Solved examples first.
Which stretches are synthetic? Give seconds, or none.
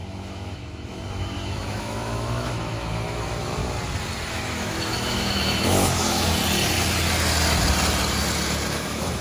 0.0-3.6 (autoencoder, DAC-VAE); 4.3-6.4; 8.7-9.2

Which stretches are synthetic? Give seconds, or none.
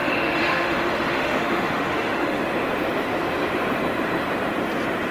0.0-2.4 (autoencoder, DAC-VAE)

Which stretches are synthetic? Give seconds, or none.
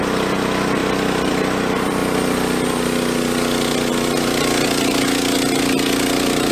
none